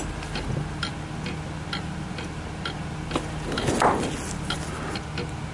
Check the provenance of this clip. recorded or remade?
recorded